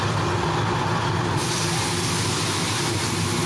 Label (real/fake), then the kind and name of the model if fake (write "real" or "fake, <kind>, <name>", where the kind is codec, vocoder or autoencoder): real